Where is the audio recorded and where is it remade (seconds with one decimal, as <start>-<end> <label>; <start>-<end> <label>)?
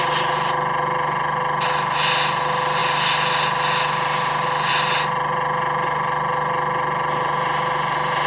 0.0-8.3 recorded